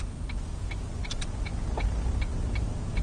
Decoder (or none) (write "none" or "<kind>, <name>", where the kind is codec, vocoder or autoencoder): none